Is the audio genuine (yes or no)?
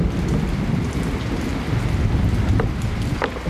yes